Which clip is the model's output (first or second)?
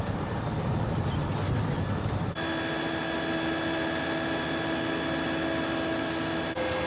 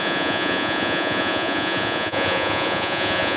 second